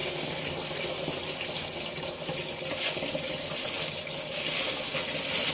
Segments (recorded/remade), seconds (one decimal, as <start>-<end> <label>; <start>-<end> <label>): 0.0-5.5 recorded